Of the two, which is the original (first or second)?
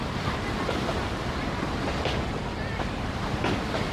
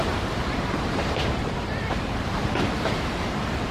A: first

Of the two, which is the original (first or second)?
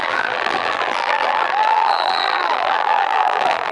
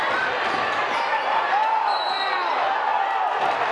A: second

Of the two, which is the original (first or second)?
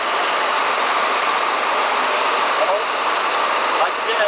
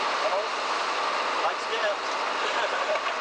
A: second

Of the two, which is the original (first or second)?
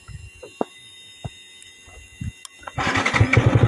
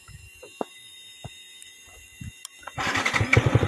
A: first